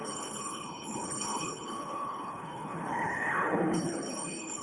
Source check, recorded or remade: remade